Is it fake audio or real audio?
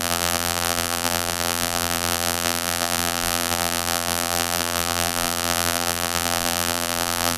fake